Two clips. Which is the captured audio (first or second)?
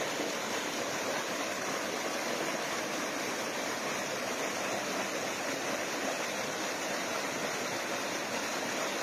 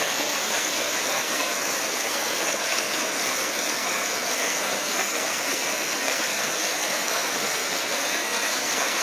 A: first